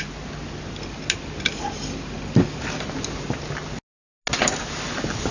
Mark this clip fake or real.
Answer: real